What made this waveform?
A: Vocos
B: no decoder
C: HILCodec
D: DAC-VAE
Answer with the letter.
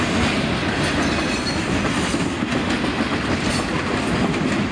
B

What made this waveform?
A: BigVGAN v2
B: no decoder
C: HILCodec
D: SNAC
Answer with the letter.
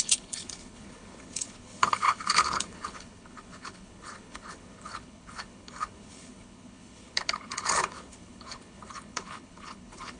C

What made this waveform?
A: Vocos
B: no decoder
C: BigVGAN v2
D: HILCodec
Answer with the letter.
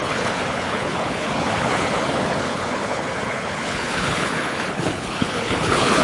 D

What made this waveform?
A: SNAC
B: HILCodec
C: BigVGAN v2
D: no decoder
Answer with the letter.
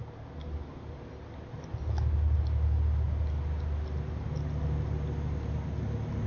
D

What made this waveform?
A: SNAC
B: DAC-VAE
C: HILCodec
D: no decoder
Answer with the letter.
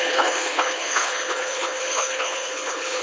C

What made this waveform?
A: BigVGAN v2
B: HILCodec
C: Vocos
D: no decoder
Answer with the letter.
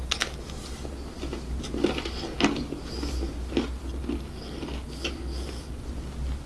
D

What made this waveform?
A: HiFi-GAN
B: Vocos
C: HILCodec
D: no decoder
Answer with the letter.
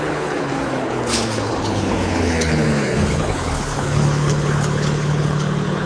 C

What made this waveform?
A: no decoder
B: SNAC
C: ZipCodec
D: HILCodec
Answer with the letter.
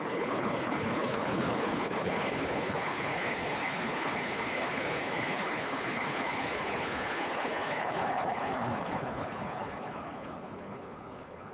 D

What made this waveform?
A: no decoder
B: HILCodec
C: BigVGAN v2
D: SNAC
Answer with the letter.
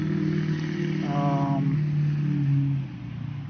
A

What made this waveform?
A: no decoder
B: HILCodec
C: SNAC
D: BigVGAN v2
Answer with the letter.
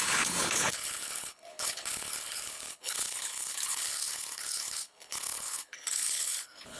B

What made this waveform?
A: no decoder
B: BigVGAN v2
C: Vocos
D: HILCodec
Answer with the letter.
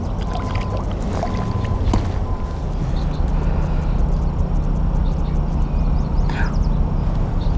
A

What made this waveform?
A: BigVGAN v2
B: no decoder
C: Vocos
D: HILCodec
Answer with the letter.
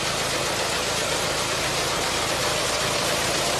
B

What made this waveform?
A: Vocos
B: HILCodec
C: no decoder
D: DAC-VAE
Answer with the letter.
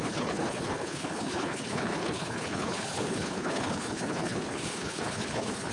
B